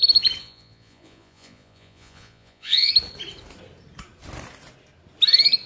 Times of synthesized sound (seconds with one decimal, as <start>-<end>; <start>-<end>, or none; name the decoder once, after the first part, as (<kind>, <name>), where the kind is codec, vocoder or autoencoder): 0.4-2.9 (vocoder, Vocos)